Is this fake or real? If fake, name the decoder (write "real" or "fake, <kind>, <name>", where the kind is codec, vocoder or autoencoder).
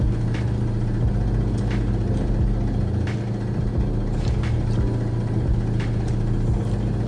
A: real